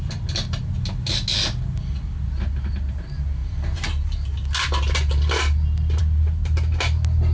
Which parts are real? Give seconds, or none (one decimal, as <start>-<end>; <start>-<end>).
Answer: 0.0-7.3